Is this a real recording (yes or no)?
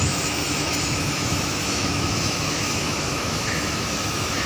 no